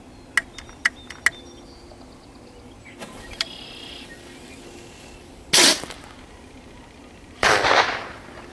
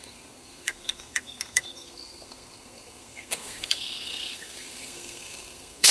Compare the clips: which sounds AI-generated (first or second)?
second